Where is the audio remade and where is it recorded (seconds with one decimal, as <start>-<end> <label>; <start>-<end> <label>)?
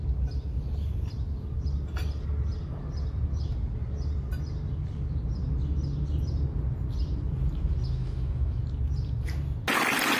0.0-8.0 recorded; 8.0-8.6 remade; 8.6-10.2 recorded